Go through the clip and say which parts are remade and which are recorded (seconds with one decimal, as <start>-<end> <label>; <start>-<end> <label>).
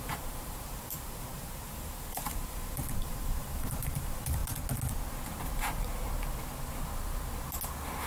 0.0-4.4 remade; 4.4-8.1 recorded